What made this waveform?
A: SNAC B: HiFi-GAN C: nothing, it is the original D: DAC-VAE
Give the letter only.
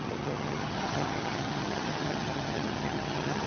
B